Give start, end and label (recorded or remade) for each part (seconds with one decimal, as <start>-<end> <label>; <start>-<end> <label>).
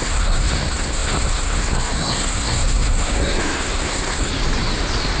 0.0-4.3 remade; 4.3-5.2 recorded